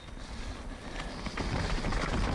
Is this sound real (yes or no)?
yes